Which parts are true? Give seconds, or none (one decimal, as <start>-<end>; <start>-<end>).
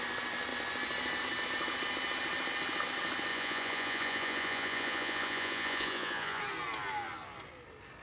0.0-3.3; 6.4-8.0